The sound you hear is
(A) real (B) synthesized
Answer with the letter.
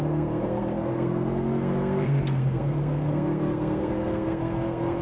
B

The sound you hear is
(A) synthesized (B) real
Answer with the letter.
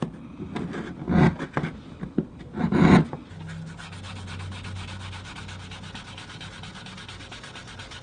B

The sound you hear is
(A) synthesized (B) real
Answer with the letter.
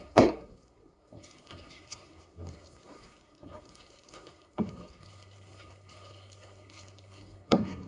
A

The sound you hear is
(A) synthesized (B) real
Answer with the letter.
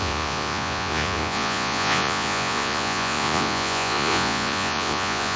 A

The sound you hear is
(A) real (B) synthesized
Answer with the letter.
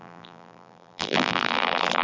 B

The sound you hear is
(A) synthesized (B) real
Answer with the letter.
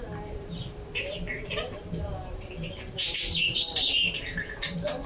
A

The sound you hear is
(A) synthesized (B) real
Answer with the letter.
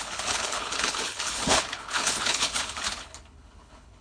A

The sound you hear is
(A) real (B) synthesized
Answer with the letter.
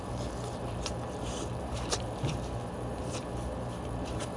B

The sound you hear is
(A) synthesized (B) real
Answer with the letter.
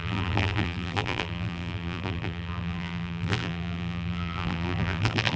A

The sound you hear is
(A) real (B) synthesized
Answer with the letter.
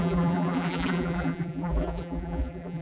B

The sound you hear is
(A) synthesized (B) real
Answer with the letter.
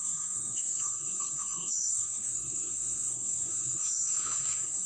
A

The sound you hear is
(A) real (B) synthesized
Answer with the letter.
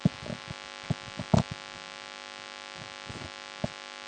A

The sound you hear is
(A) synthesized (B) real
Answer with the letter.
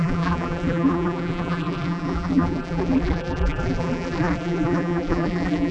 A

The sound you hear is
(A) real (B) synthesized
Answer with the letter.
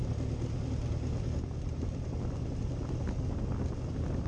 A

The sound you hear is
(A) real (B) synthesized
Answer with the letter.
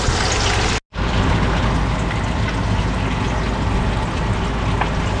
A